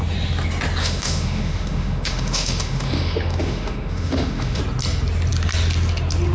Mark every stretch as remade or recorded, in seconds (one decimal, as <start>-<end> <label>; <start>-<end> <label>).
0.0-0.8 recorded; 0.8-4.6 remade; 4.6-6.3 recorded